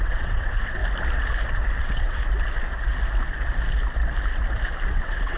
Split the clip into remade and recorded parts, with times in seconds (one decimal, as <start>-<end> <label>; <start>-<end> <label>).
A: 0.0-0.8 remade; 0.8-1.8 recorded; 1.8-2.2 remade; 2.2-4.9 recorded; 4.9-5.4 remade